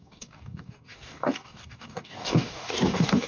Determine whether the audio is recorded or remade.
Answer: remade